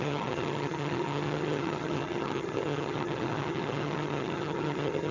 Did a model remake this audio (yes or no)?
yes